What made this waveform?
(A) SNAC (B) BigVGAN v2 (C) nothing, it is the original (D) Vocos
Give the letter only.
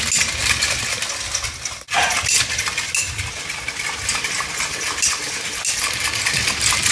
C